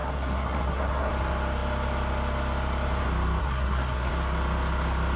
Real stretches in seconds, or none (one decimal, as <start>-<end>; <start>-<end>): 1.1-3.4; 4.1-5.2